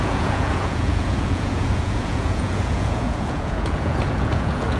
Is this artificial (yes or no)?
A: yes